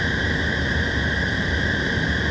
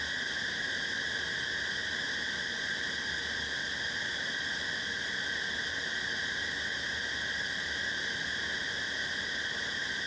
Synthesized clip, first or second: first